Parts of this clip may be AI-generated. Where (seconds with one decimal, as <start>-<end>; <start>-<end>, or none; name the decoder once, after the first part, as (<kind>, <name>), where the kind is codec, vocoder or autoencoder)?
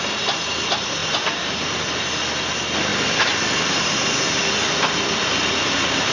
2.9-3.9 (vocoder, BigVGAN v2)